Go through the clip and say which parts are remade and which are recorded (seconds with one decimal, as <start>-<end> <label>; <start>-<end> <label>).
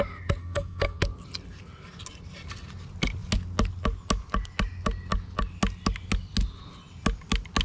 0.0-0.4 recorded; 0.4-1.0 remade; 1.0-7.6 recorded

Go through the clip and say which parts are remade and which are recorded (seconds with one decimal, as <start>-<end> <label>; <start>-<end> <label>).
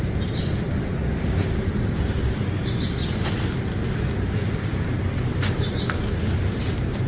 0.0-7.1 recorded